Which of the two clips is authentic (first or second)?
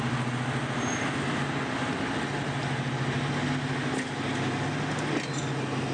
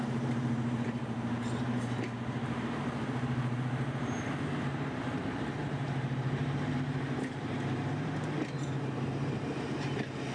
first